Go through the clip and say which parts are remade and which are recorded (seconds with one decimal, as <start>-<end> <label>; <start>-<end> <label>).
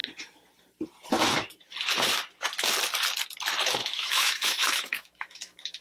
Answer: 0.0-3.8 recorded; 3.8-5.8 remade